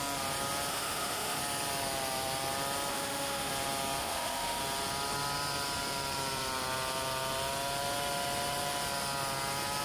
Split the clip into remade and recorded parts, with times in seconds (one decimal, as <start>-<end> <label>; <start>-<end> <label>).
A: 0.0-0.7 recorded; 0.7-1.4 remade; 1.4-2.9 recorded; 2.9-3.5 remade; 3.5-4.0 recorded; 4.0-4.6 remade; 4.6-9.8 recorded